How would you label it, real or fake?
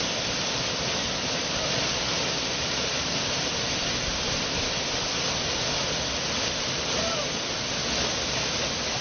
real